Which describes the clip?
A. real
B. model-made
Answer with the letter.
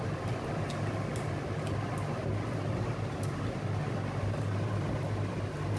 A